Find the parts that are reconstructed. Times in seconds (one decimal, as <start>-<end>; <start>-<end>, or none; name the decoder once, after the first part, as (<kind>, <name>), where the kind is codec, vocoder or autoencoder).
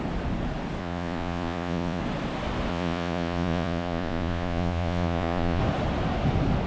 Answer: 0.8-2.0 (vocoder, Vocos); 2.7-5.6